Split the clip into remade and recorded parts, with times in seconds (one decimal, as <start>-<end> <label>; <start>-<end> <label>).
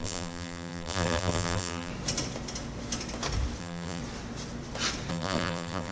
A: 0.0-1.9 remade; 1.9-3.6 recorded; 3.6-4.0 remade; 4.0-5.1 recorded; 5.1-5.9 remade